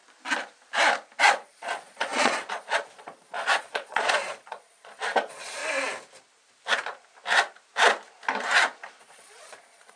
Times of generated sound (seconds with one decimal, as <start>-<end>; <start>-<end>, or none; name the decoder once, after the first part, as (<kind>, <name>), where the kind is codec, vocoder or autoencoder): 1.2-5.6 (vocoder, Vocos); 9.0-10.0